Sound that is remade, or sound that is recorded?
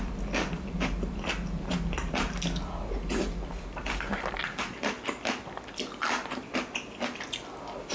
recorded